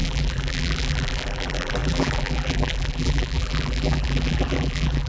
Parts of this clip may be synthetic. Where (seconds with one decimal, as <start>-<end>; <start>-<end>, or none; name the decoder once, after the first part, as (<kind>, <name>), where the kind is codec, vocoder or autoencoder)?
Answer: 0.0-5.1 (vocoder, BigVGAN v2)